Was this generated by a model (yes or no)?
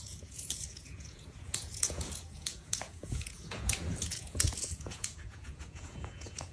yes